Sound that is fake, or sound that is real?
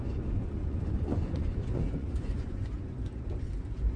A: fake